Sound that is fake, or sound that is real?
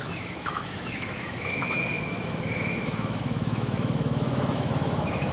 fake